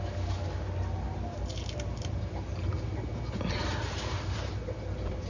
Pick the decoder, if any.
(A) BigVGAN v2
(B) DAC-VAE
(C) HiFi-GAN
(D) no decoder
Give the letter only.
D